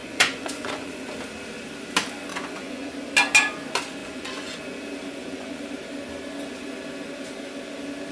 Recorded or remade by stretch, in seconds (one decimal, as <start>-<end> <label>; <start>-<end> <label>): 0.0-1.1 remade; 1.1-2.3 recorded; 2.3-2.9 remade; 2.9-4.0 recorded; 4.0-4.6 remade; 4.6-5.1 recorded; 5.1-5.6 remade; 5.6-8.1 recorded